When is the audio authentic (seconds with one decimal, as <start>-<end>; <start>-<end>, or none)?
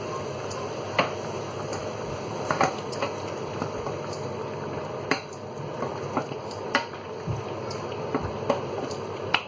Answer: 0.0-1.7; 5.9-9.5